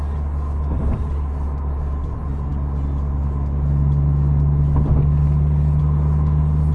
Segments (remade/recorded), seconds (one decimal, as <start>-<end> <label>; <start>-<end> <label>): 0.0-6.7 recorded